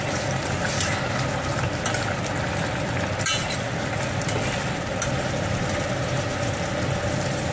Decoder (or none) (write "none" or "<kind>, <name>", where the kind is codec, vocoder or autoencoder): none